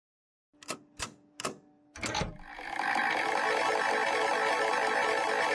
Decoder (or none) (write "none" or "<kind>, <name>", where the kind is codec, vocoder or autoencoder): none